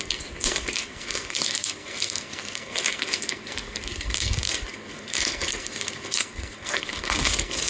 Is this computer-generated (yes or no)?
yes